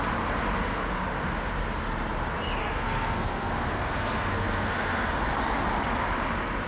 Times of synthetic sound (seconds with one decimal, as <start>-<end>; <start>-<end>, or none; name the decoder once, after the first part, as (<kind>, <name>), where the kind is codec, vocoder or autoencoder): 2.6-5.2 (codec, SNAC)